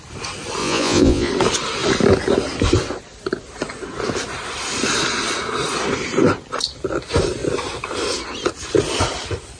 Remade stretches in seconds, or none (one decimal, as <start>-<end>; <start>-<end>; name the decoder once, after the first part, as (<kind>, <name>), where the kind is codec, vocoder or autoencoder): 0.6-1.3 (vocoder, Vocos)